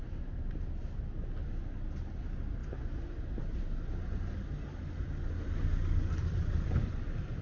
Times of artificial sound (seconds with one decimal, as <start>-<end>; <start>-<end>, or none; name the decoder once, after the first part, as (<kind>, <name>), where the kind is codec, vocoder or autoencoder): none